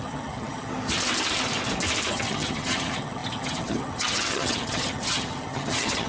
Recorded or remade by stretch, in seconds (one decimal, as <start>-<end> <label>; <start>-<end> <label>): 0.0-0.7 remade; 0.7-2.1 recorded; 2.1-6.1 remade